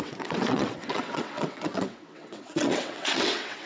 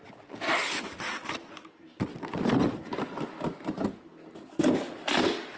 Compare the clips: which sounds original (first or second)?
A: second